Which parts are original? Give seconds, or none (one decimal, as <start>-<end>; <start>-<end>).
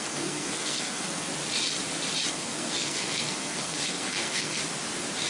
1.3-2.3; 4.6-5.3